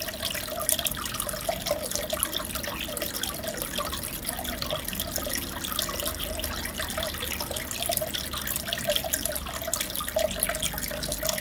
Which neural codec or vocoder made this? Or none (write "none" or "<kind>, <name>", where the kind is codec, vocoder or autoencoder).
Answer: none